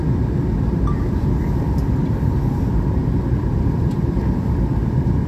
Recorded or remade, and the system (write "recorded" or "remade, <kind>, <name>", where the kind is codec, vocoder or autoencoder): remade, vocoder, BigVGAN v2